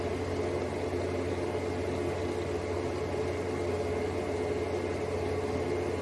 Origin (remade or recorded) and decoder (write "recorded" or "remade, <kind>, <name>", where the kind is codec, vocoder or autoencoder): recorded